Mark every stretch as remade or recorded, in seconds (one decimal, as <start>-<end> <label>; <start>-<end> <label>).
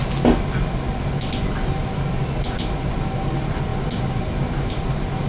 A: 0.0-5.3 recorded